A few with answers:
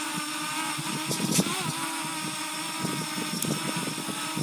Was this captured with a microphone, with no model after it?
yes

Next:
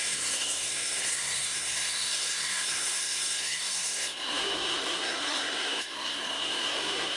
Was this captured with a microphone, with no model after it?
no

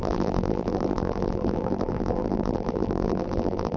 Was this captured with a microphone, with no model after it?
no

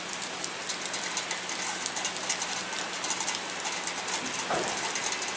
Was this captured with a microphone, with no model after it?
yes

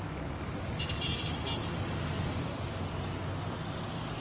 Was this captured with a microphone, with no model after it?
yes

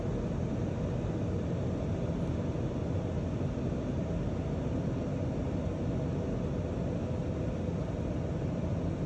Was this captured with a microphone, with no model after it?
yes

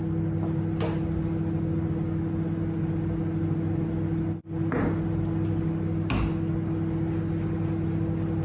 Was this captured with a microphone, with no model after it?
yes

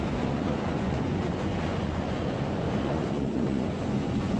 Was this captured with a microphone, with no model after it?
no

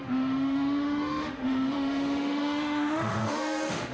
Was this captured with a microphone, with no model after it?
no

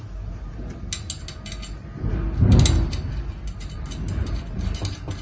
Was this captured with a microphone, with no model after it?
yes